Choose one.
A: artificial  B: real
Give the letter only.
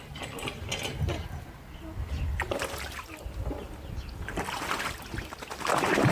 B